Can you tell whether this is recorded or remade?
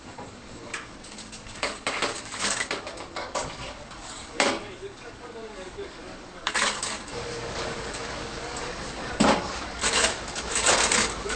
remade